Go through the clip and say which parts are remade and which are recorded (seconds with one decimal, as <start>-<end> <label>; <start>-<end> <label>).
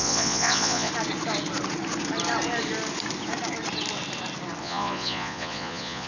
0.0-0.9 remade; 0.9-4.6 recorded; 4.6-6.1 remade